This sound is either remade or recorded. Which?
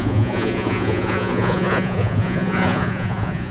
remade